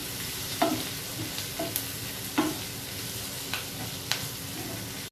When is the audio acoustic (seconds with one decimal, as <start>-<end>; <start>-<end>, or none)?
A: 0.7-5.1